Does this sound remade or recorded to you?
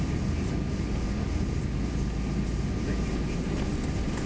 recorded